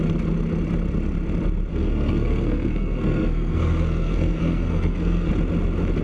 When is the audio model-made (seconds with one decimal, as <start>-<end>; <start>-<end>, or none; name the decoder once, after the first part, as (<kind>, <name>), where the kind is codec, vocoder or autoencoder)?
1.7-5.3 (codec, SNAC)